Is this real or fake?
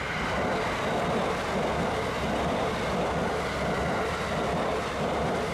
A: real